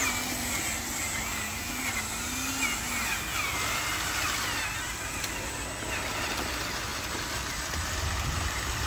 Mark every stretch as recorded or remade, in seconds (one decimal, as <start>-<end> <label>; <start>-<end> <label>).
0.0-8.9 recorded